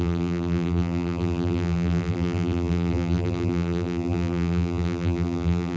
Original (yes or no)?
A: no